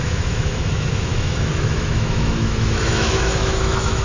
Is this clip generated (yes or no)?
yes